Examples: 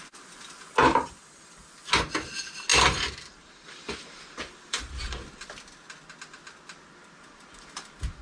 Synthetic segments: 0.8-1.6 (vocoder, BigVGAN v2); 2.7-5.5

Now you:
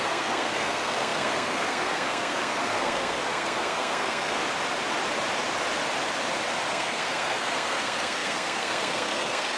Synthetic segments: 0.0-4.4 (codec, SNAC); 6.7-9.6

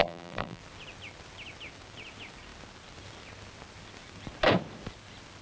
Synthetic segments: 0.0-0.6 (vocoder, BigVGAN v2)

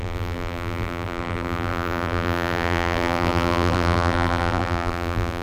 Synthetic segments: 0.0-5.4 (vocoder, BigVGAN v2)

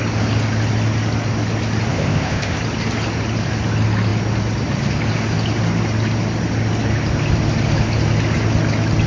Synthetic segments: 1.9-2.6 (codec, ZipCodec)

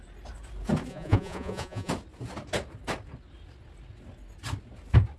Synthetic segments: 0.9-1.9 (vocoder, Vocos)

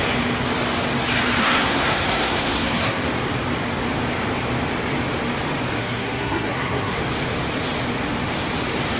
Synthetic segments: 1.4-3.0 (codec, SNAC); 5.8-7.0